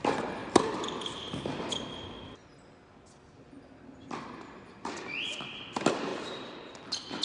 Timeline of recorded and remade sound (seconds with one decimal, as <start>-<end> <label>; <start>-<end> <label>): 0.0-6.1 recorded; 6.1-6.8 remade; 6.8-7.2 recorded